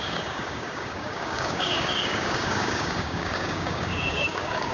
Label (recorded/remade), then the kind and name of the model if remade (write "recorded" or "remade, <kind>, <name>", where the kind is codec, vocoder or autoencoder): remade, codec, DAC